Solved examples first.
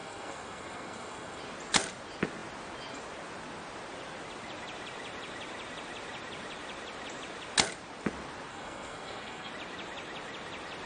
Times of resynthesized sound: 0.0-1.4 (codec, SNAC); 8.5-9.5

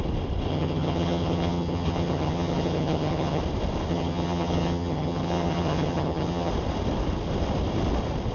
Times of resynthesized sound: 0.5-3.4 (vocoder, HiFi-GAN); 3.9-6.5

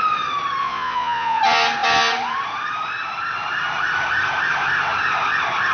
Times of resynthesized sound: 0.6-1.4 (vocoder, Vocos)